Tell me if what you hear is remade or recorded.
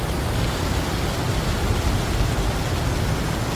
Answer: recorded